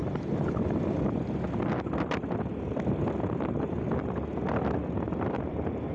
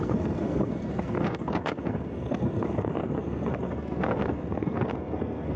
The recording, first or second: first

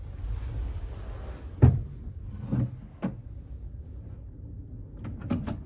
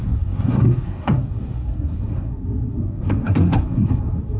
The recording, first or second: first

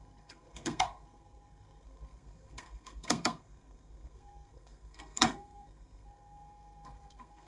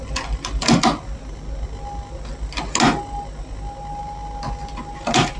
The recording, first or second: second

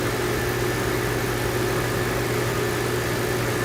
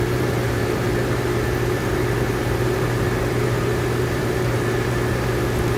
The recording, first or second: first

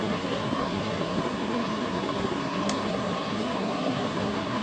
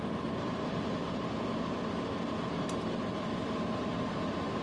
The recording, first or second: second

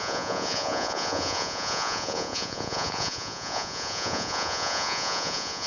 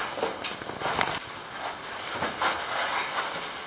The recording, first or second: second